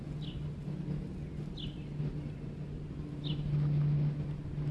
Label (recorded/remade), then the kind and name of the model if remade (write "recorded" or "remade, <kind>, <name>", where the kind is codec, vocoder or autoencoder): recorded